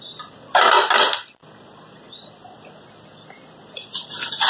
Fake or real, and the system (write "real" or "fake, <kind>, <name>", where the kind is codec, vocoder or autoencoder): real